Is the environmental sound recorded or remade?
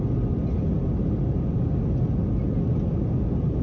recorded